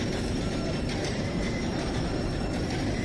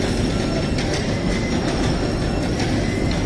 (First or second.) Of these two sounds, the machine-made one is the first